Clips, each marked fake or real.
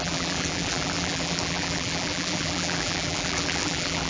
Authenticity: fake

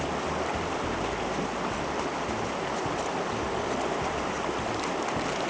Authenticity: real